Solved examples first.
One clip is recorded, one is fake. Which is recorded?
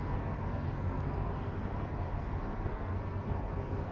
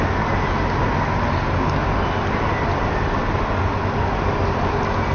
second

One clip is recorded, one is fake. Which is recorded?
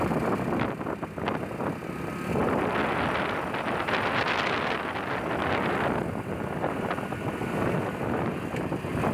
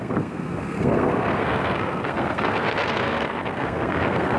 first